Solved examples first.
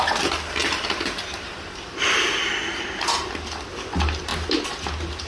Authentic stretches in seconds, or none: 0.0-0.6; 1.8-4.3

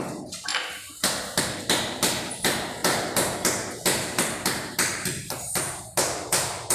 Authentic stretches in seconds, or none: 0.0-2.8; 6.3-6.7

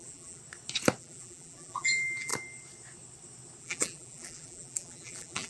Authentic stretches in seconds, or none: 0.4-1.0; 2.3-3.6

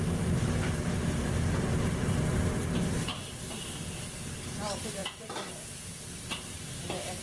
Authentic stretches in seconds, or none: 0.0-1.7; 4.0-7.2

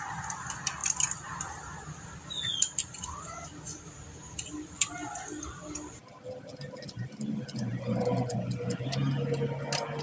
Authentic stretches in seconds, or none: 0.0-2.5; 4.9-6.0; 8.0-10.0

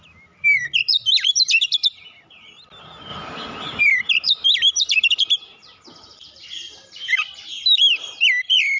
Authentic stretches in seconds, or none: none